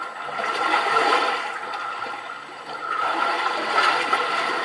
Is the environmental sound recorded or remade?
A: remade